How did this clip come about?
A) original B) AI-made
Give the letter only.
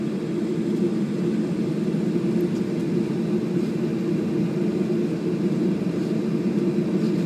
A